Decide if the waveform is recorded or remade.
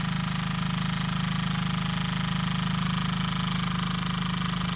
recorded